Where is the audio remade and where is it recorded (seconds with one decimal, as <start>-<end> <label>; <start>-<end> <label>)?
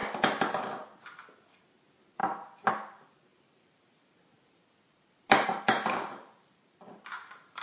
0.0-3.3 recorded; 3.3-7.6 remade